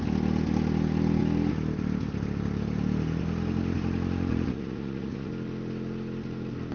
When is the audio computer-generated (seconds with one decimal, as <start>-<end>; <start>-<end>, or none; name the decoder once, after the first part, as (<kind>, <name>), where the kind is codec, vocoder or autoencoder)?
4.3-5.3 (vocoder, Vocos)